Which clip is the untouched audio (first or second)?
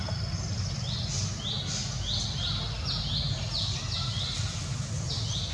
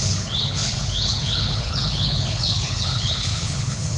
first